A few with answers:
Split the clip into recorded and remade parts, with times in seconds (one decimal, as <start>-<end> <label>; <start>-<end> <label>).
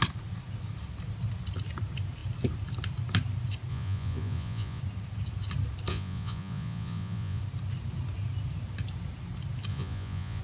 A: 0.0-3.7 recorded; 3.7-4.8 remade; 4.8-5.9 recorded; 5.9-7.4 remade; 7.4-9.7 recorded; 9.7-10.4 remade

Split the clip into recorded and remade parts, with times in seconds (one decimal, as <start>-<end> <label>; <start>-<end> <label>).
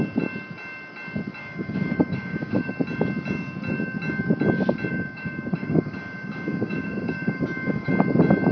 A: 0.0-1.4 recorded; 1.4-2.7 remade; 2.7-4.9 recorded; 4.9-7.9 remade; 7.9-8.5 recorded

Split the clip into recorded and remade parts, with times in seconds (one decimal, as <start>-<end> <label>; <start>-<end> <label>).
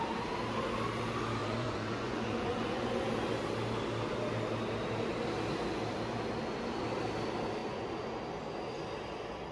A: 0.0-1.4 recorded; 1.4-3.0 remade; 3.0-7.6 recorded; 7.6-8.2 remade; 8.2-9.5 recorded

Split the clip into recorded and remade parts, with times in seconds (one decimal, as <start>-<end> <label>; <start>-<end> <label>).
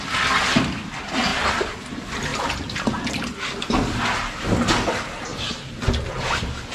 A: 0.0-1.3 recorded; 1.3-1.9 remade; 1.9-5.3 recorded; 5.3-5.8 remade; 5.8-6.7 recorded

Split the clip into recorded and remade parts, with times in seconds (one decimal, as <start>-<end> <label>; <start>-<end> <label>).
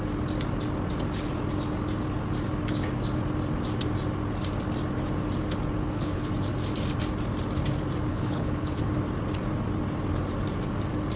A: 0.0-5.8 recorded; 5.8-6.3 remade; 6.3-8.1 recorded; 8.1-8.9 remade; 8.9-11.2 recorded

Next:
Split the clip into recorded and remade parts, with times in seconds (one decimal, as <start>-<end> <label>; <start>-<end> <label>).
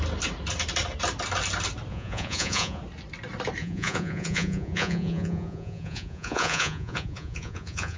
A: 0.0-1.9 recorded; 1.9-2.8 remade; 2.8-3.6 recorded; 3.6-8.0 remade